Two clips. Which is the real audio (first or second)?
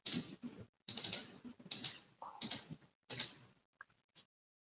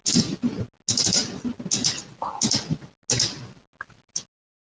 second